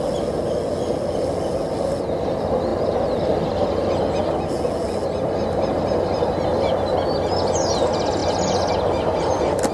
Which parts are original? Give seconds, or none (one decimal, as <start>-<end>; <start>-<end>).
0.0-2.7; 4.0-8.2; 8.7-9.7